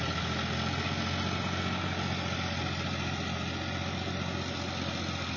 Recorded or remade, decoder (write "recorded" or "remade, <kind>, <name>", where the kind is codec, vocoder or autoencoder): recorded